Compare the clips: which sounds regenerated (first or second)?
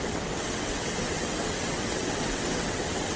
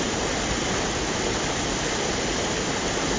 first